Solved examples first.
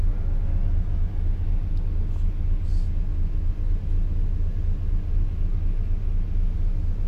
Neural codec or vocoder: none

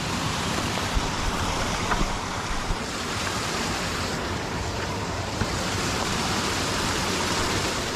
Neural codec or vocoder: vocoder, BigVGAN v2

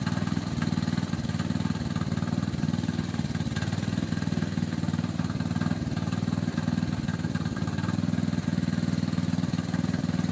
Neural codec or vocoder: none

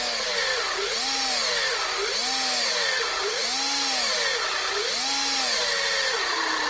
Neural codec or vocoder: none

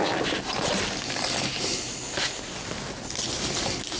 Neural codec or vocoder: none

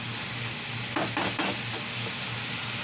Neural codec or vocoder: none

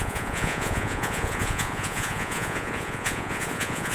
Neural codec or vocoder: vocoder, Vocos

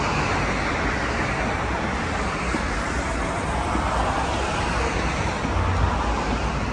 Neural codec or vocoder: none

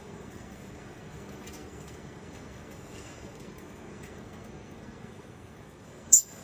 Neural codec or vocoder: codec, SNAC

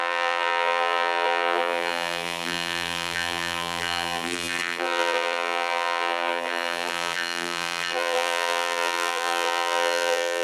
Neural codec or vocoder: vocoder, BigVGAN v2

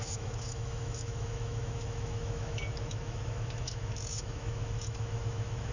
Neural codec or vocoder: autoencoder, DAC-VAE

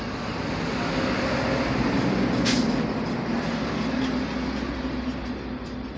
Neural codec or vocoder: none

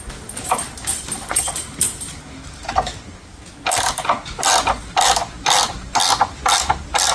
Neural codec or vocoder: none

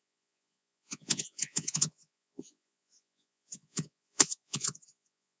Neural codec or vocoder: vocoder, Vocos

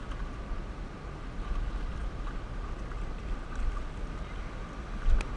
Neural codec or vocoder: none